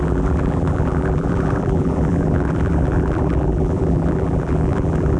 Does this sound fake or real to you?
fake